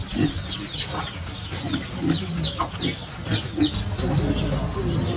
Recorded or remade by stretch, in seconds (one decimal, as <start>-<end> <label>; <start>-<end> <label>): 0.0-5.2 recorded